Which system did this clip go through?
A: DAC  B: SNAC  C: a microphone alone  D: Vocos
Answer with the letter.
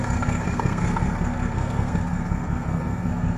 B